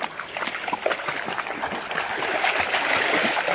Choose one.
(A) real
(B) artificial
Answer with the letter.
A